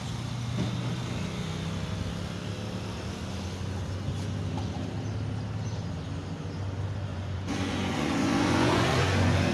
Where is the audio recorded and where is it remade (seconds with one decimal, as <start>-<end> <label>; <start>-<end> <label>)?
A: 0.0-7.1 recorded; 7.1-9.5 remade